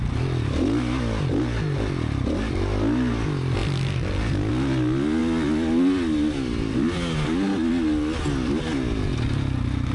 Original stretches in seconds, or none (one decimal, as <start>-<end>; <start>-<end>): 0.0-9.9